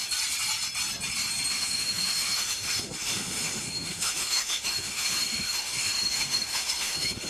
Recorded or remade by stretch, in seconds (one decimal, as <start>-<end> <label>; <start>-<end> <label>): 0.0-1.5 recorded; 1.5-7.3 remade